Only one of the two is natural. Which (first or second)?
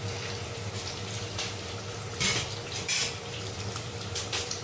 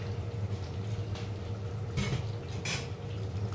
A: second